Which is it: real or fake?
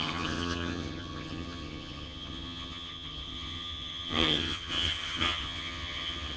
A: fake